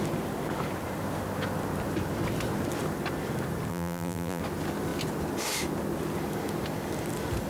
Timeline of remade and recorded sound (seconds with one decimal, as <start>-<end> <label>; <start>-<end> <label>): 0.0-3.7 recorded; 3.7-4.4 remade; 4.4-7.5 recorded